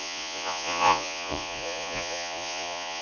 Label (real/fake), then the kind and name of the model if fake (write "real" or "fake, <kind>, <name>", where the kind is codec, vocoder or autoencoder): fake, vocoder, Vocos